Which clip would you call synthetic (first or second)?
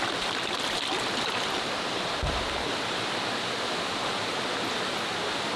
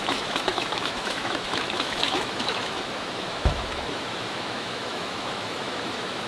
second